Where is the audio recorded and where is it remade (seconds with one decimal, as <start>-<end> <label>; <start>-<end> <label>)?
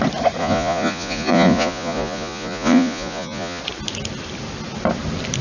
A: 0.0-0.4 recorded; 0.4-3.6 remade; 3.6-5.4 recorded